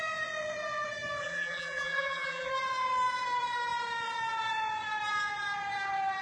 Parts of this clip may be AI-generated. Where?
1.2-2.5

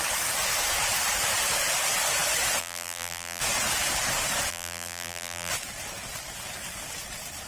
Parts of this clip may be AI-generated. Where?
2.6-3.4; 4.5-5.5

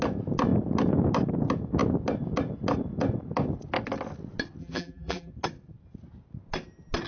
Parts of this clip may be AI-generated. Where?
4.6-5.3

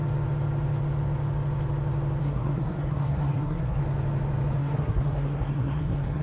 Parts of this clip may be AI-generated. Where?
2.2-3.8; 4.6-6.2

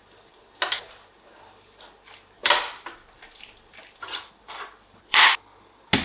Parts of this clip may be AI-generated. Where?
2.4-5.3

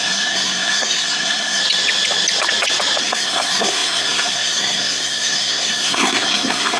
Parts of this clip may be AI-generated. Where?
0.0-1.6; 3.0-6.8

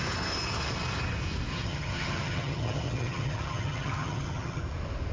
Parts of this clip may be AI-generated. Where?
1.5-4.6